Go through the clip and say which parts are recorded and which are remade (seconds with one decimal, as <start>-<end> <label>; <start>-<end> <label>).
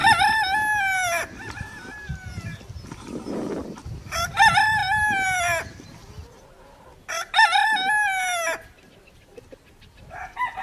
0.0-10.6 recorded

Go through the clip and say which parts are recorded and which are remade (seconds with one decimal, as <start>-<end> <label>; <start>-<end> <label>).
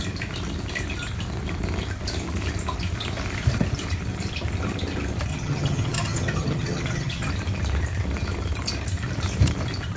0.0-5.3 recorded; 5.3-7.3 remade; 7.3-10.0 recorded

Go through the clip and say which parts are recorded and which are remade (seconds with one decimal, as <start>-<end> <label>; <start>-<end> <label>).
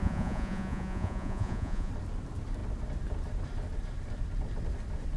0.0-1.9 remade; 1.9-5.2 recorded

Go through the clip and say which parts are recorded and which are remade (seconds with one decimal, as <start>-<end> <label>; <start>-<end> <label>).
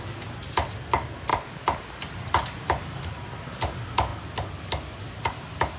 0.0-5.8 recorded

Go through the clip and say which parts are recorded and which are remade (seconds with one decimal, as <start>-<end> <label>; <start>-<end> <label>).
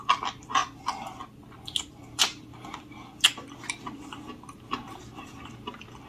0.0-6.1 recorded